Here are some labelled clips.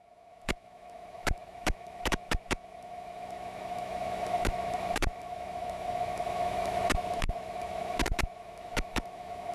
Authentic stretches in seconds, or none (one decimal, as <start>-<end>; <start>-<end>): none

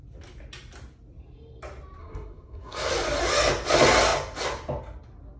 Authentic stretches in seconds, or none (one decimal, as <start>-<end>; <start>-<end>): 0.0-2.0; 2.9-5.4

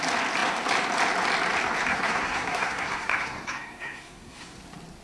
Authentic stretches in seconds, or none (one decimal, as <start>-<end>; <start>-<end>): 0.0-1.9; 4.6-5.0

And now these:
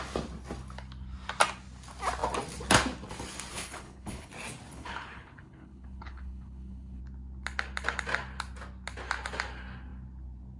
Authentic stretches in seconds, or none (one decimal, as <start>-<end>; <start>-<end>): 0.0-3.5; 4.3-4.7; 7.0-10.6

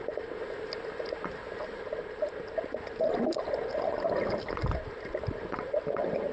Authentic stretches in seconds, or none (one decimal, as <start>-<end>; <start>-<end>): 0.0-6.3

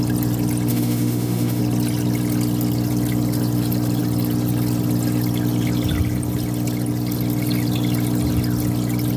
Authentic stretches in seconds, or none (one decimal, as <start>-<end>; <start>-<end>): 0.0-0.7; 1.6-9.2

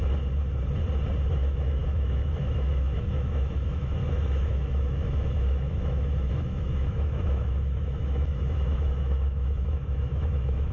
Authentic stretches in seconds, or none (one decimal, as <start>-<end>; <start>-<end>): 0.0-1.3